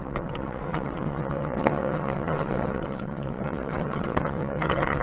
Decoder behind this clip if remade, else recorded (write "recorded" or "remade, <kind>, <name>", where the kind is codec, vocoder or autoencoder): remade, vocoder, WaveNeXt